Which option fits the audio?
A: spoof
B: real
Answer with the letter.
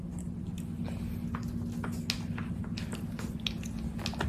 B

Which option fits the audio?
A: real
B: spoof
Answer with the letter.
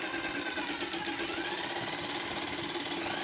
A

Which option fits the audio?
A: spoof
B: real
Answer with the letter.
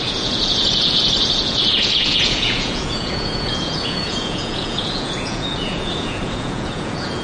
A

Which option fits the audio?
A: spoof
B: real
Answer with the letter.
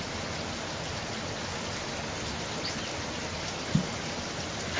B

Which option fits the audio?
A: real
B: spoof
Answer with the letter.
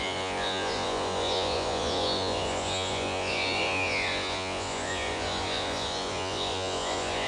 B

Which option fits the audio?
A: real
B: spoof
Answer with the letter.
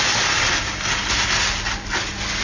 A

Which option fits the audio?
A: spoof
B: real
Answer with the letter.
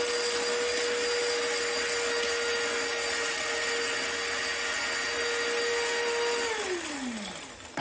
B